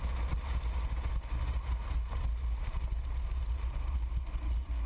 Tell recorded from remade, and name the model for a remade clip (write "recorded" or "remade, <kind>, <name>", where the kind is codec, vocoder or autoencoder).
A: recorded